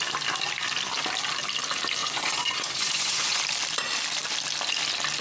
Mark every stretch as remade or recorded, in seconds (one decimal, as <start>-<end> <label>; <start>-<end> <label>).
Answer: 0.0-2.0 recorded; 2.0-3.4 remade; 3.4-5.2 recorded